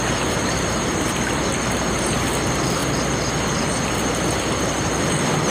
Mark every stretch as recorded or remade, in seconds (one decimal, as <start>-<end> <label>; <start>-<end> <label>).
0.0-5.5 recorded